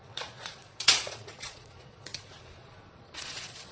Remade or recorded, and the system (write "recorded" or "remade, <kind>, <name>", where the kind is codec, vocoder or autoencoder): remade, vocoder, Vocos